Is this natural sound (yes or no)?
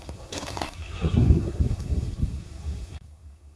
no